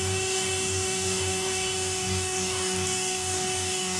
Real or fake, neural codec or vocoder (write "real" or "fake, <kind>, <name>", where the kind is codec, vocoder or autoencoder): fake, codec, DAC